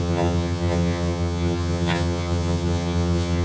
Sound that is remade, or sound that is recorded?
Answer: remade